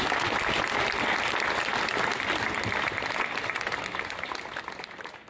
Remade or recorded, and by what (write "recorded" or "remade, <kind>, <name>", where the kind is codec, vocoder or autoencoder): recorded